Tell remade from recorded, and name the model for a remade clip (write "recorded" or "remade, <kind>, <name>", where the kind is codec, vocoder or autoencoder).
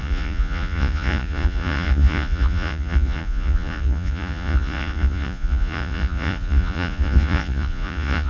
remade, vocoder, Vocos